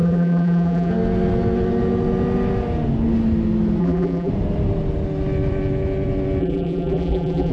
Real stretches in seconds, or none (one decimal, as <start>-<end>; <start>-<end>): 0.9-3.8; 4.3-6.4